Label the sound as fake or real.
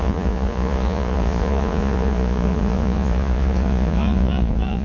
fake